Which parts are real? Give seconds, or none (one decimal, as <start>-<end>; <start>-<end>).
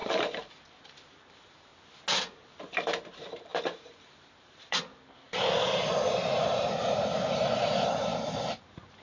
1.7-2.3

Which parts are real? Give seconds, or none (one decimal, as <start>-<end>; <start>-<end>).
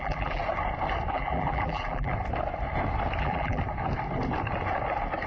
0.4-1.1; 2.1-3.2; 3.6-5.3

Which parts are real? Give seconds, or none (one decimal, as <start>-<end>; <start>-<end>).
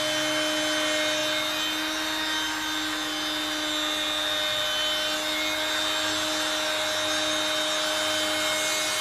0.0-9.0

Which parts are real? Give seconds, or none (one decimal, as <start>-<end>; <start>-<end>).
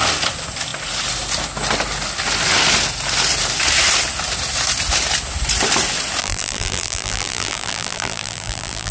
0.0-6.2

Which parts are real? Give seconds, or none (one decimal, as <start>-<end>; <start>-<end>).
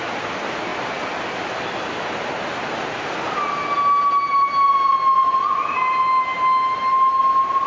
0.0-7.7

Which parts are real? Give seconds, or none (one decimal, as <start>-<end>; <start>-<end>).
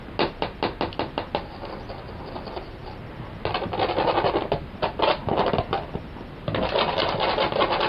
0.0-7.9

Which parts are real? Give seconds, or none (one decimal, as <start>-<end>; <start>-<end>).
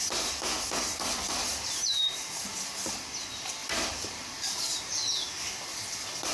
0.0-1.5; 2.4-3.6; 5.3-6.3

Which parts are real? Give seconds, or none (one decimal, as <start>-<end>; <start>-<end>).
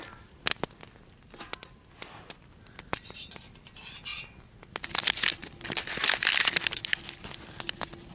0.5-2.5; 4.1-8.1